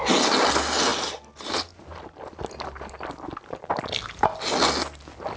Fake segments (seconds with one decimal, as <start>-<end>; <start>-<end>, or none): none

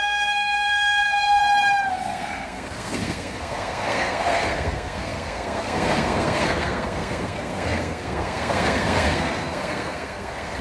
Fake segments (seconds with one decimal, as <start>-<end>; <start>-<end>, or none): 0.0-1.4; 1.9-10.6

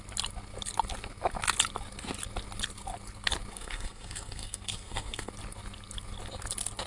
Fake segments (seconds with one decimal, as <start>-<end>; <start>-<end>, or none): 3.5-5.3

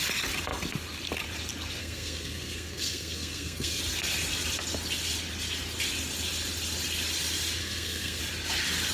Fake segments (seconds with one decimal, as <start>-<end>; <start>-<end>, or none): 1.8-3.8; 7.6-8.2

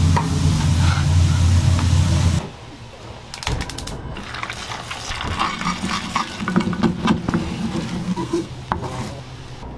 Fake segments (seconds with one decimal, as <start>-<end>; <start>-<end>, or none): 8.0-8.5